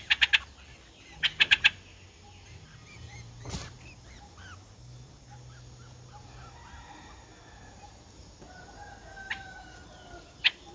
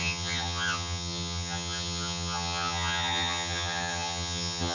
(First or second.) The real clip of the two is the first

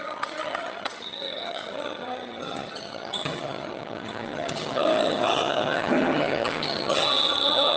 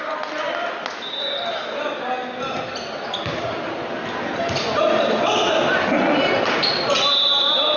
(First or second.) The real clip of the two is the second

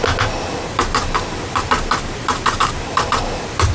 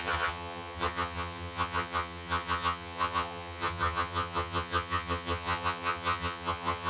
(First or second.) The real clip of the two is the first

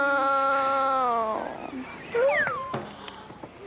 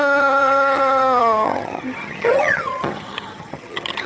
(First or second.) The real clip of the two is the first